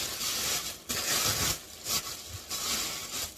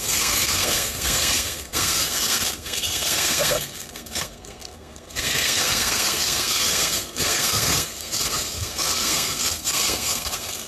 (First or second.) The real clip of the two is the first